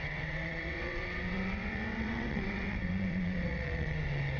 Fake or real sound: fake